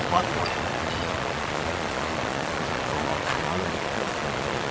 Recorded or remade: remade